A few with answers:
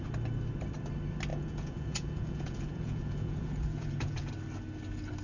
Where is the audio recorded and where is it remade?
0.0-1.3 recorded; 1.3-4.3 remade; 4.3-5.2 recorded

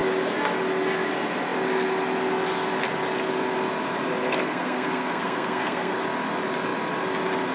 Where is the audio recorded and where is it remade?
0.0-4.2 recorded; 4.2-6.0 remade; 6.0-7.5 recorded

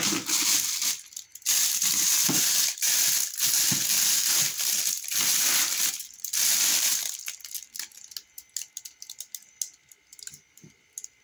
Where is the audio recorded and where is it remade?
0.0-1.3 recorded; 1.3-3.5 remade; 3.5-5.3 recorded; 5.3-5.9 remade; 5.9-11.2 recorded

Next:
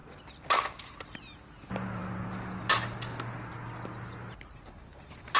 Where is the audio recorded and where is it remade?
0.0-5.4 recorded